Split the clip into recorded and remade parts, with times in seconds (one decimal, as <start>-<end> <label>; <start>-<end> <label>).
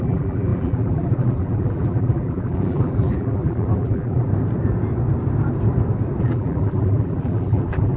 0.0-4.3 remade; 4.3-6.2 recorded; 6.2-8.0 remade